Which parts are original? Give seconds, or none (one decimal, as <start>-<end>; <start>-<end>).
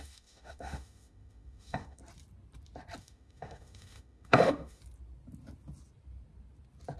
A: 2.0-3.0; 4.8-7.0